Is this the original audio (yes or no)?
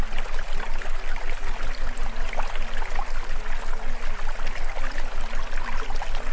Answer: yes